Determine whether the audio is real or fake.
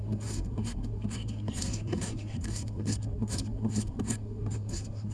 fake